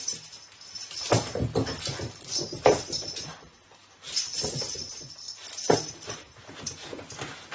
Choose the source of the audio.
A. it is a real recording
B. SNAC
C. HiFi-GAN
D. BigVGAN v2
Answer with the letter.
A